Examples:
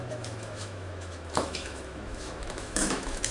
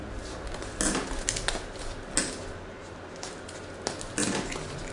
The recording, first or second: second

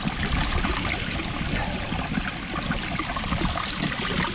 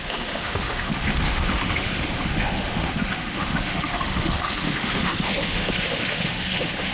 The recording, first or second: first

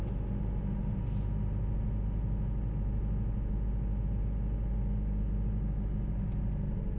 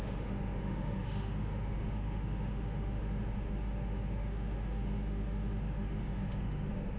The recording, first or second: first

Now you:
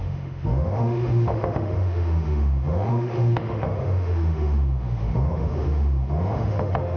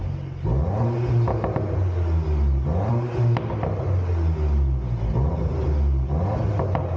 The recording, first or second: second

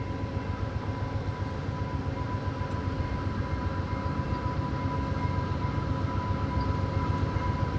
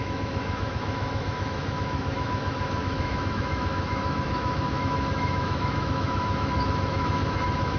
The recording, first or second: first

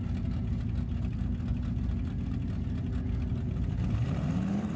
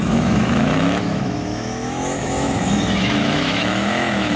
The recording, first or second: first